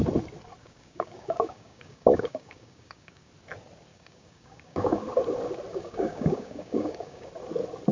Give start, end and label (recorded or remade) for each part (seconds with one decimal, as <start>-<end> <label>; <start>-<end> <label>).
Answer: 0.0-0.6 recorded; 0.6-3.3 remade; 3.3-3.9 recorded; 3.9-5.0 remade; 5.0-5.7 recorded; 5.7-7.3 remade; 7.3-7.9 recorded